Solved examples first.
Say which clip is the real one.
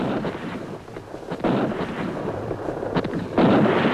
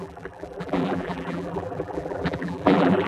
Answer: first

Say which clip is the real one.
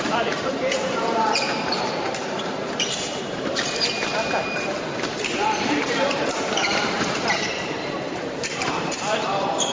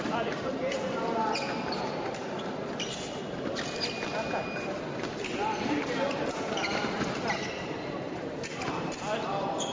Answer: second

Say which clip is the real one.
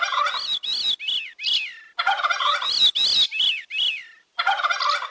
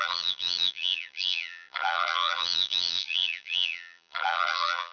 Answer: first